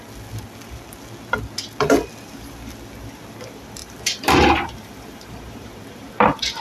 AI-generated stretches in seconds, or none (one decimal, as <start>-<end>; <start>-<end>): 3.8-6.6